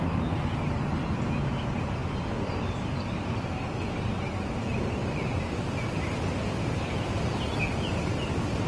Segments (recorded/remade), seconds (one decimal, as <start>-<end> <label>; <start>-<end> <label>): 0.0-8.7 recorded